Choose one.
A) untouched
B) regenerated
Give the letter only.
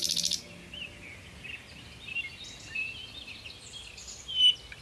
A